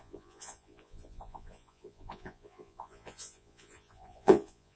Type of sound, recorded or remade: remade